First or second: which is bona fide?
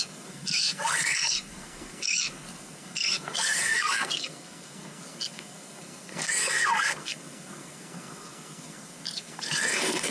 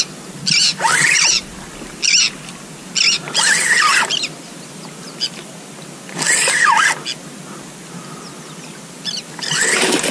second